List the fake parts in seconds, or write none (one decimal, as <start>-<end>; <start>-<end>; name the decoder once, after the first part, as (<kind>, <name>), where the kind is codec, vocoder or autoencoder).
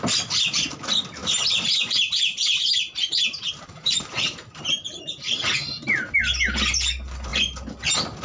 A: 1.2-5.0 (vocoder, BigVGAN v2)